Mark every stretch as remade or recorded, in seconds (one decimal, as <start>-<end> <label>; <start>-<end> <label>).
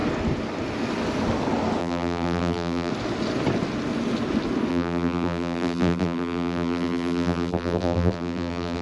0.0-1.8 recorded; 1.8-2.9 remade; 2.9-4.7 recorded; 4.7-8.8 remade